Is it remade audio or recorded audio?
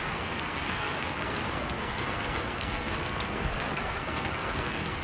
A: remade